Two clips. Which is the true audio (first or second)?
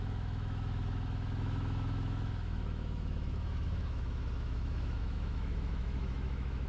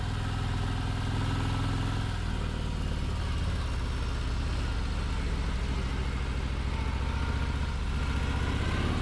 second